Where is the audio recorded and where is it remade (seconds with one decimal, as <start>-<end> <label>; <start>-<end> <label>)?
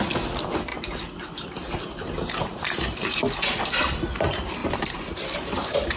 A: 0.0-0.7 recorded; 0.7-3.6 remade; 3.6-4.6 recorded; 4.6-6.0 remade